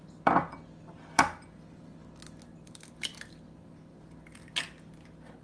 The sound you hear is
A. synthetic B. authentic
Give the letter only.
B